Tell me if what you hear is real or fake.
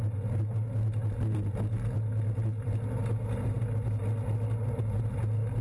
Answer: real